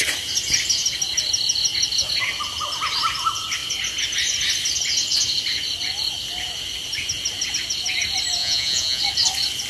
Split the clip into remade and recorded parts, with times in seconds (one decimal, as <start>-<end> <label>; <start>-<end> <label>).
0.0-8.4 recorded; 8.4-9.0 remade; 9.0-9.7 recorded